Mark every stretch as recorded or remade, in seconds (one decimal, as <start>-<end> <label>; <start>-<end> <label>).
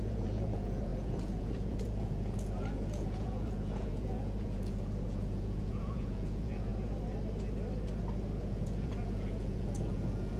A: 0.0-6.7 remade; 6.7-8.4 recorded; 8.4-10.4 remade